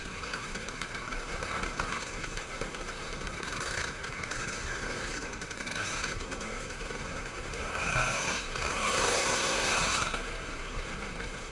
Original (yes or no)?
no